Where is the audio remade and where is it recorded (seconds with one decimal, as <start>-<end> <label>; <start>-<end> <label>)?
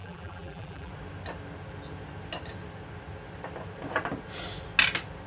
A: 0.0-0.9 remade; 0.9-5.3 recorded